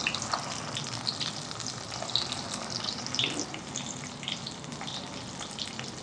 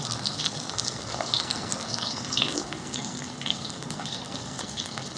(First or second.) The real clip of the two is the first